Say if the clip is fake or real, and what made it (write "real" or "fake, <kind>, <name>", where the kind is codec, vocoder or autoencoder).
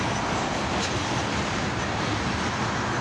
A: real